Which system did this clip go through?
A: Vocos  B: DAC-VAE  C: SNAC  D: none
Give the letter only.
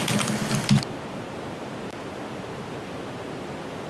D